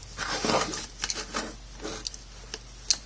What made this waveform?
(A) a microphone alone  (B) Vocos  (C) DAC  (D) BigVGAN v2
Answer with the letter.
A